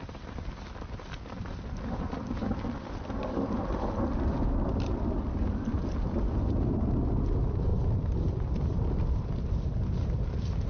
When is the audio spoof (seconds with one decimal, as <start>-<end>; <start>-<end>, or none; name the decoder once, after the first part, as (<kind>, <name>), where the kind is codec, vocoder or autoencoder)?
none